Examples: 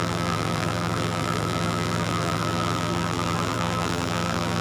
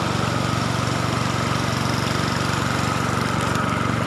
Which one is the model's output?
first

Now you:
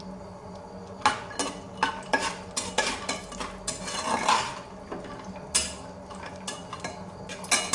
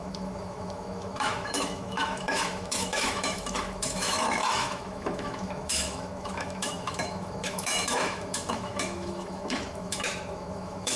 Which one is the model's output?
second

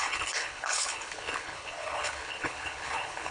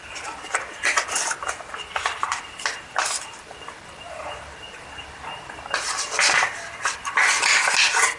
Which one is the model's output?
first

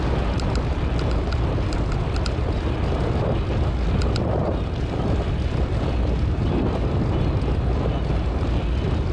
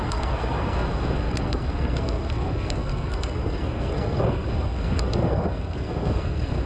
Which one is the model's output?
second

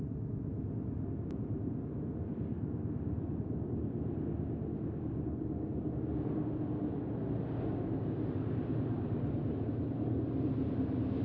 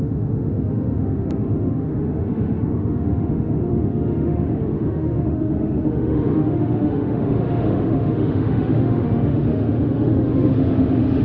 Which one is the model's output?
second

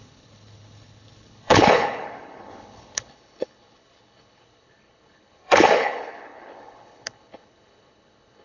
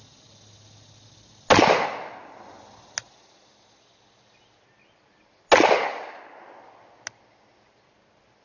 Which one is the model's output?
first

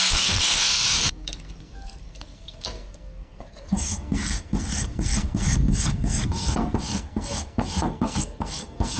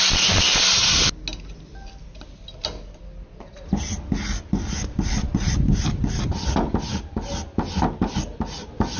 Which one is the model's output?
first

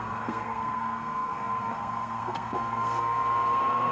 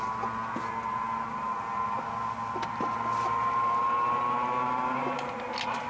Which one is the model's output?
first